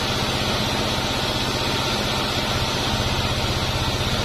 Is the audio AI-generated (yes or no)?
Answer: no